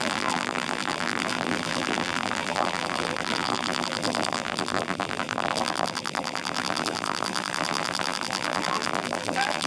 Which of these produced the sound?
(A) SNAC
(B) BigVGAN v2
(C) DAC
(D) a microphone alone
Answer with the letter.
B